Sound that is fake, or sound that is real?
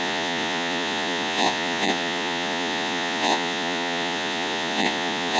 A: fake